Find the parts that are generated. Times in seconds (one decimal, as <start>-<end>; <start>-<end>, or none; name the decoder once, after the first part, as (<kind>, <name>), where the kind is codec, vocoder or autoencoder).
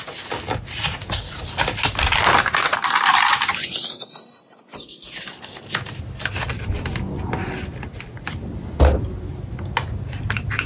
none